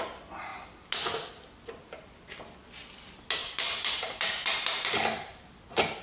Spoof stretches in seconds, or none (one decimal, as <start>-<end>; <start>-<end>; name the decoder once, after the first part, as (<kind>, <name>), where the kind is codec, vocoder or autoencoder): 3.4-4.6 (vocoder, BigVGAN v2)